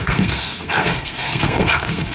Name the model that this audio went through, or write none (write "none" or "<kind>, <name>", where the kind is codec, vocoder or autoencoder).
codec, SNAC